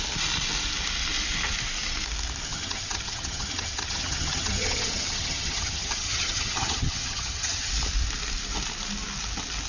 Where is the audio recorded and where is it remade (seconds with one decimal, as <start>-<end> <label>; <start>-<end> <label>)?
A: 0.0-2.5 recorded; 2.5-7.7 remade; 7.7-9.7 recorded